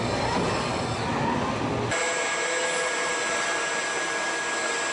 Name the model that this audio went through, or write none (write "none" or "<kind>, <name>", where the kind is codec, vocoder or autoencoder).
none